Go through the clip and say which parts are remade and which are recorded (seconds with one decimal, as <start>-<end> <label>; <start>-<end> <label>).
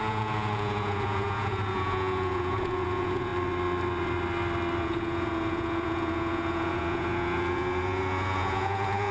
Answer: 0.0-3.3 remade; 3.3-4.8 recorded; 4.8-9.1 remade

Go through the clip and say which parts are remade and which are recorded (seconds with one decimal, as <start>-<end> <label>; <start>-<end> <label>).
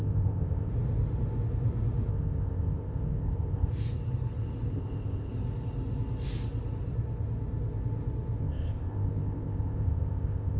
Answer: 0.0-0.7 remade; 0.7-2.1 recorded; 2.1-3.7 remade; 3.7-4.7 recorded; 4.7-5.3 remade; 5.3-8.4 recorded; 8.4-10.6 remade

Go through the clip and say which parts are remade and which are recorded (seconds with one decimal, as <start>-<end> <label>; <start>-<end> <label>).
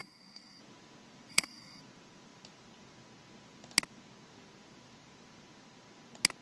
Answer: 0.0-0.6 remade; 0.6-1.3 recorded; 1.3-1.8 remade; 1.8-6.4 recorded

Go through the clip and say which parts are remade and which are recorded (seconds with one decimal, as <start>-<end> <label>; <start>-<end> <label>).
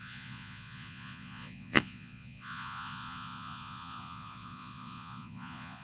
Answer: 0.0-5.8 remade